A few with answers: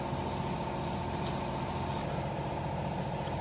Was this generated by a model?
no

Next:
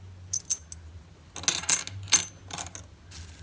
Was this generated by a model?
no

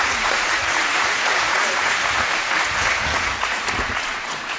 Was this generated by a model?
yes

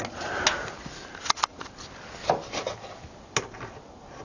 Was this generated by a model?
no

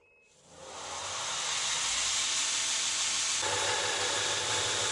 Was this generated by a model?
no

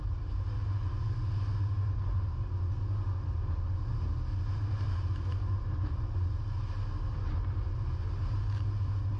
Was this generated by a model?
no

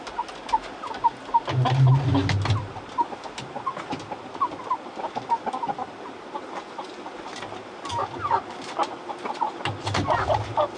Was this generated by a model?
no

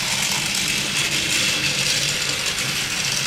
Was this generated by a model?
no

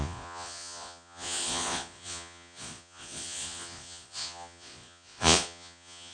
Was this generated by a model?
yes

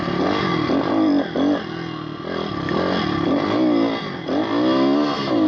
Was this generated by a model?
no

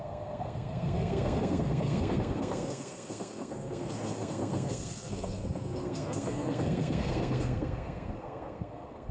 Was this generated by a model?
yes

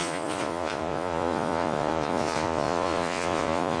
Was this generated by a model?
yes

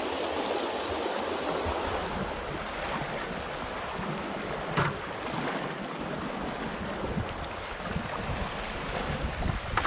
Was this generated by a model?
no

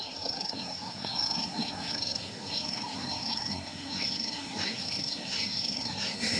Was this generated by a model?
yes